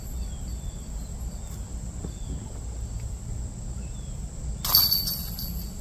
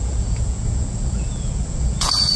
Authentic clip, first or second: first